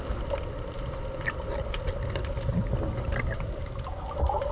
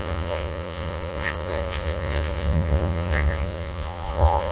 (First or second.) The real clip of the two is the first